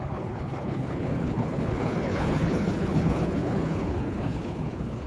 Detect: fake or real fake